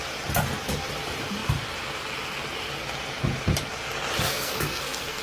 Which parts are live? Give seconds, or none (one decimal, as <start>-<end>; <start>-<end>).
0.0-4.3